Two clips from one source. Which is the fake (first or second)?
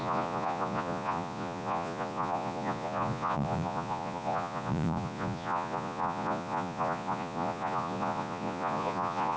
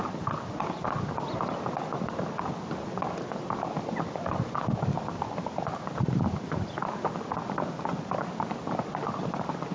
first